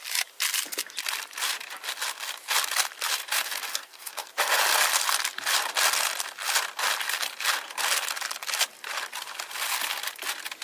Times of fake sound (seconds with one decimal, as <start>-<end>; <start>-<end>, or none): 3.7-4.3